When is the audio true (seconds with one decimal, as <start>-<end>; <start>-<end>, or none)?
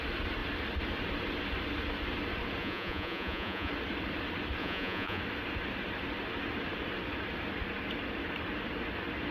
0.0-2.6; 3.7-4.6; 5.2-9.3